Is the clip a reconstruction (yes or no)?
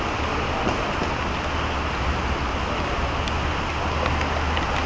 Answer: no